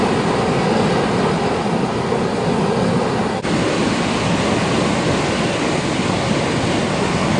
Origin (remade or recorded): recorded